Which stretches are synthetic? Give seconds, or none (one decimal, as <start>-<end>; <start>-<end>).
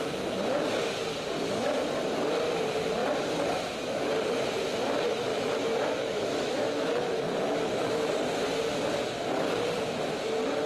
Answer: 5.3-8.1